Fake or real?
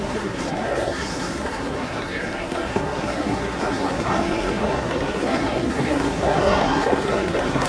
fake